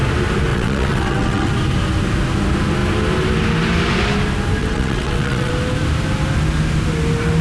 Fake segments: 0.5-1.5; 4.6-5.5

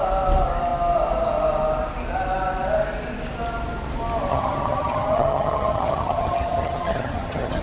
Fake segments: 4.3-7.6

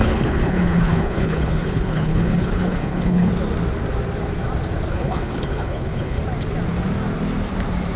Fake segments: 0.0-3.3; 4.9-6.2

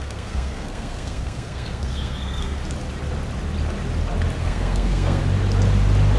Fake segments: 0.0-2.6; 4.4-5.2

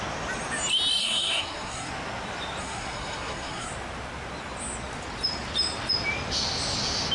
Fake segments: 1.0-1.9; 2.6-3.7

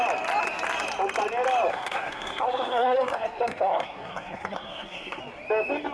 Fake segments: 1.7-5.2

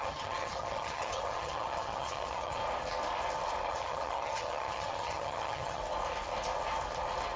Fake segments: 0.0-2.6; 3.7-5.8

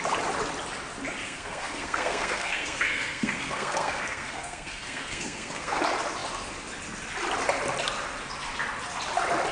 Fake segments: 1.2-5.8